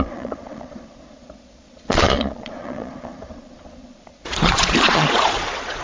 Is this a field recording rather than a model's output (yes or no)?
no